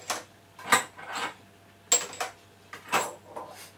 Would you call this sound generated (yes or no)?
no